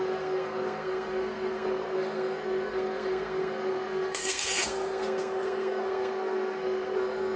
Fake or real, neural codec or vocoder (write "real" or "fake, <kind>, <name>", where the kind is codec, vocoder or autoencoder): fake, codec, SNAC